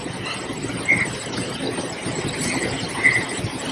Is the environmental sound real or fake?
real